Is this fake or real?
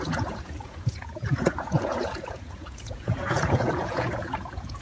fake